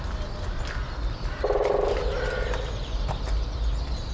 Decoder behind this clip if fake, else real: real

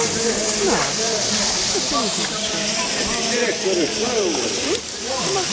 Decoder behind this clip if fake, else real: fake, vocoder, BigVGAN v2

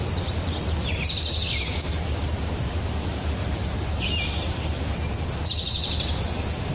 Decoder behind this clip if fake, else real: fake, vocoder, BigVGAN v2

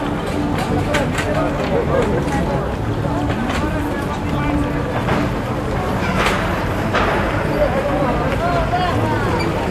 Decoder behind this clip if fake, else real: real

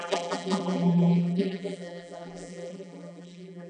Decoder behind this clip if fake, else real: fake, vocoder, BigVGAN v2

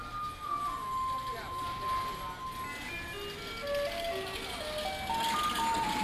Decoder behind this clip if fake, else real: real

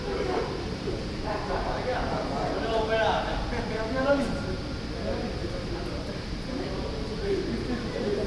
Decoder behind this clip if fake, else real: fake, vocoder, BigVGAN v2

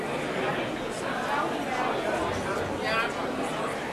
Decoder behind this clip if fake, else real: real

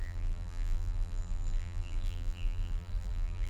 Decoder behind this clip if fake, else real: fake, vocoder, BigVGAN v2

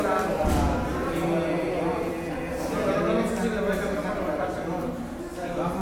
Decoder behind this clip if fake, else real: real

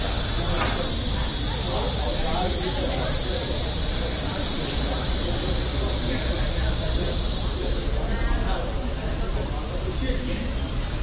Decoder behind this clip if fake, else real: fake, vocoder, BigVGAN v2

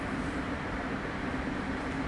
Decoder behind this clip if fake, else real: fake, vocoder, BigVGAN v2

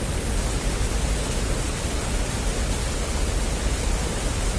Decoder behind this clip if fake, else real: real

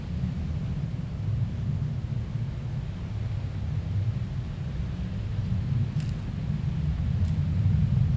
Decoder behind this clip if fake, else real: real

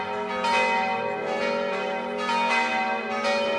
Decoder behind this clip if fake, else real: real